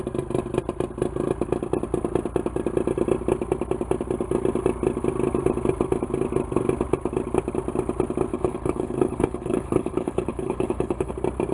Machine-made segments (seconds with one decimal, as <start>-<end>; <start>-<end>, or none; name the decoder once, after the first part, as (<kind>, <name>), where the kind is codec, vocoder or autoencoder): 8.3-11.1 (codec, HILCodec)